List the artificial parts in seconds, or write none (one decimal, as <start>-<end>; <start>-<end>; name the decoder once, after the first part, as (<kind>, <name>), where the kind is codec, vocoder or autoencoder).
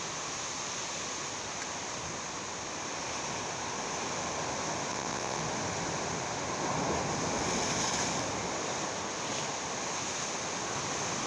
4.9-5.4 (vocoder, WaveNeXt)